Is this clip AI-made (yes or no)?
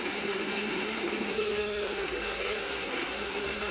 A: yes